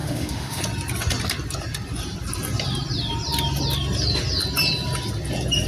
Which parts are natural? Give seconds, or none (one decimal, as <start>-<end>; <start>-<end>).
0.6-5.7